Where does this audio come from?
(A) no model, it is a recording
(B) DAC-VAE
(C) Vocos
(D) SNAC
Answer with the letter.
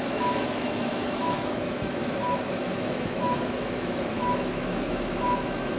B